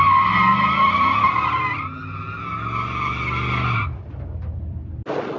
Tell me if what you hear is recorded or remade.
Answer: recorded